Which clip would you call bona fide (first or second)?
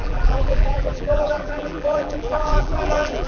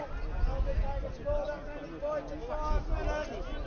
second